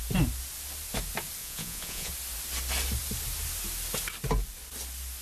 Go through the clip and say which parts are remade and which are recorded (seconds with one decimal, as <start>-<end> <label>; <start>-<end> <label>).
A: 0.0-1.4 recorded; 1.4-2.1 remade; 2.1-5.2 recorded